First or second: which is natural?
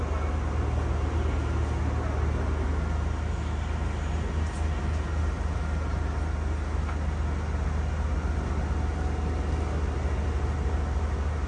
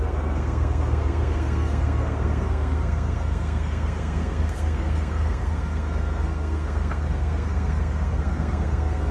first